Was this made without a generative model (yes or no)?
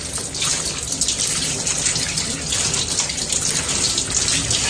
yes